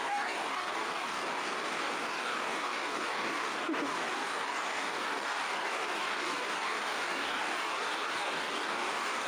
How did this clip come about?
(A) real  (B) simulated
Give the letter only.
B